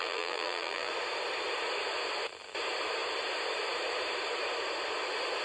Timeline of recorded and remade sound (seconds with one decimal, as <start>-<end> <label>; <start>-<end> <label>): 0.0-0.9 remade; 0.9-5.4 recorded